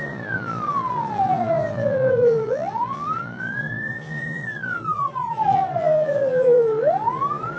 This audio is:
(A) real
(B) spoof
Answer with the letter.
B